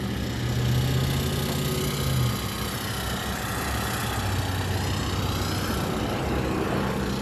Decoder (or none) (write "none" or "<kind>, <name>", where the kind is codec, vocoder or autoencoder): none